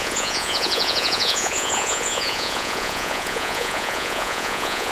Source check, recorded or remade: remade